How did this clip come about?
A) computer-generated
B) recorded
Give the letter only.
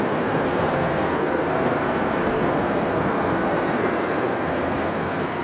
A